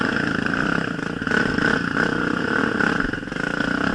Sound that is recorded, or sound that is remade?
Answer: recorded